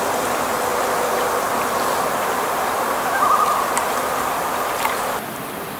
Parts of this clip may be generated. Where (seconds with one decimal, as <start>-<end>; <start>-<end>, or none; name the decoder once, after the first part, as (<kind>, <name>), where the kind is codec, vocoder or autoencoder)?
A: none